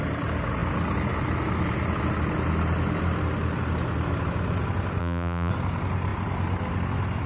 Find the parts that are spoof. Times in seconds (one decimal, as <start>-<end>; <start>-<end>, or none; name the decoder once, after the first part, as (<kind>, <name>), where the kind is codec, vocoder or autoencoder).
5.0-5.5 (vocoder, BigVGAN v2)